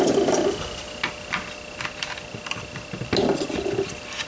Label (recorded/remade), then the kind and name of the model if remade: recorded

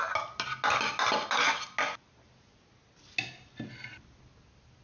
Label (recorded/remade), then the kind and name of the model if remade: recorded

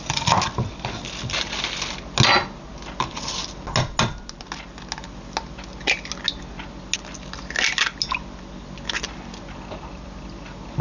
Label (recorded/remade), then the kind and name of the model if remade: recorded